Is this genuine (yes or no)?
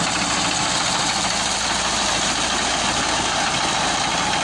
yes